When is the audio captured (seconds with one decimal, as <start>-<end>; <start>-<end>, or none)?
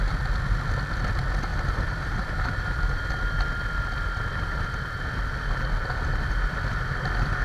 0.0-1.5; 3.3-7.4